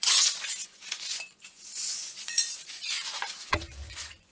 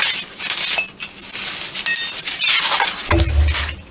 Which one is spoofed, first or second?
first